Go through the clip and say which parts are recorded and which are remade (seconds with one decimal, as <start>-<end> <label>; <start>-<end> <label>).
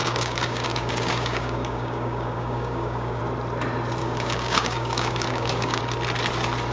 0.0-3.2 remade; 3.2-4.0 recorded; 4.0-5.8 remade; 5.8-6.7 recorded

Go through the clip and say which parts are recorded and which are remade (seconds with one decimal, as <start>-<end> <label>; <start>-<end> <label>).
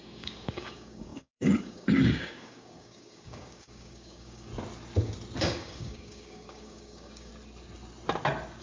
0.0-4.5 remade; 4.5-5.4 recorded; 5.4-7.3 remade; 7.3-8.6 recorded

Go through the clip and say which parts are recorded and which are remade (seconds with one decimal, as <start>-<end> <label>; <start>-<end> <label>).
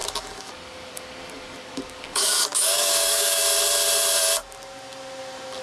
0.0-3.4 remade; 3.4-5.6 recorded